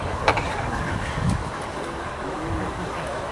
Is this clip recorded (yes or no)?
no